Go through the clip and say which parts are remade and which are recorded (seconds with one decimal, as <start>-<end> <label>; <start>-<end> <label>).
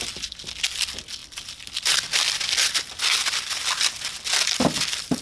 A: 0.0-5.2 recorded